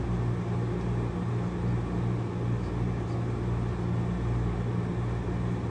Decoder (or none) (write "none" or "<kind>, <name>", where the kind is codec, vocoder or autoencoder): none